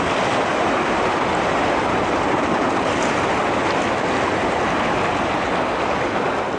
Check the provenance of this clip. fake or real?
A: real